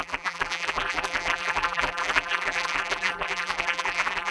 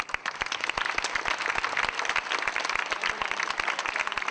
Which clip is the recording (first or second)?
second